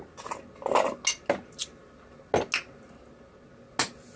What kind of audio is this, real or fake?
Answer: real